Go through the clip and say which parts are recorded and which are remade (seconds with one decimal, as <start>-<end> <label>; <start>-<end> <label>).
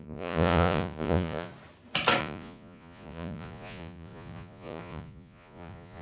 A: 0.0-1.5 remade; 1.5-2.2 recorded; 2.2-6.0 remade